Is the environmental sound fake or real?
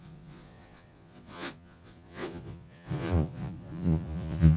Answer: fake